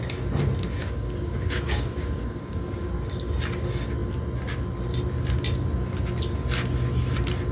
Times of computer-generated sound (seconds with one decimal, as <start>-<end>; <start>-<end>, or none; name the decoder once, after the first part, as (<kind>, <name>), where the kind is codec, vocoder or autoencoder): 0.8-2.9 (codec, DAC)